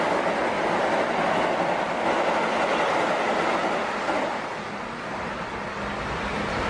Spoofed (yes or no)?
no